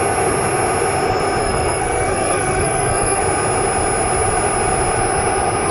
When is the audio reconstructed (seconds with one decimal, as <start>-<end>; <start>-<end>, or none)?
1.4-3.2